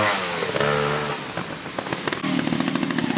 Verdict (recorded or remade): recorded